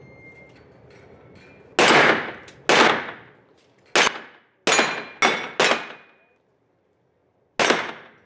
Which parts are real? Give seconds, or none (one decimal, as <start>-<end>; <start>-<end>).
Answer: 0.0-8.3